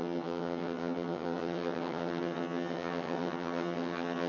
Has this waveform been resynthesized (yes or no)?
yes